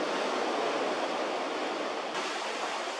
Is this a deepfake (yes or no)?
no